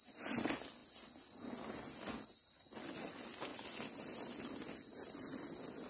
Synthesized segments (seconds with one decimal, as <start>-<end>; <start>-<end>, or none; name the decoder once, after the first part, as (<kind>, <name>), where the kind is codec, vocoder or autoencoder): none